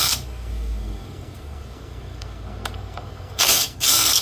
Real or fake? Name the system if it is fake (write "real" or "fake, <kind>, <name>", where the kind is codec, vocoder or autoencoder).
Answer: fake, codec, SNAC